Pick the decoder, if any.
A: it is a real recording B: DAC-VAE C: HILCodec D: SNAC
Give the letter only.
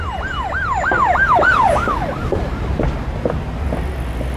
A